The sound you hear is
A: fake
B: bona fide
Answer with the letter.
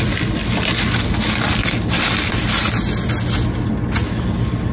B